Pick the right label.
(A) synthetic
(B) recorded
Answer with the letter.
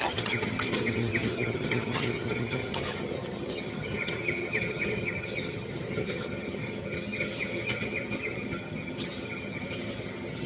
A